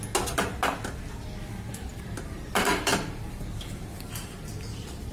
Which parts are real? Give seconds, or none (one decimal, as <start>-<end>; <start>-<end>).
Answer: 0.0-1.9